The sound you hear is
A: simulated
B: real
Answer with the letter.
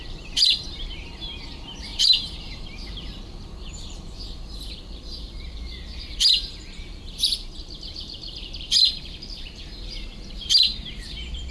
A